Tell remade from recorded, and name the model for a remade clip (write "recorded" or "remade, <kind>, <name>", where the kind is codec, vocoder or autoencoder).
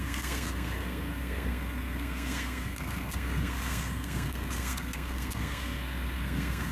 remade, codec, SNAC